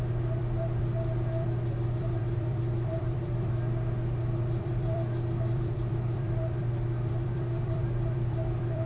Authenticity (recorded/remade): remade